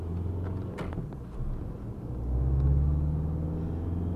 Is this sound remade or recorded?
recorded